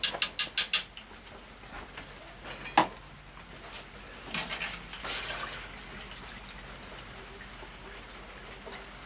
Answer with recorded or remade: recorded